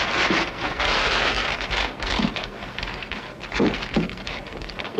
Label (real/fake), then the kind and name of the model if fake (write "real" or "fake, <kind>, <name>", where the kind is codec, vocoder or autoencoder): fake, codec, SNAC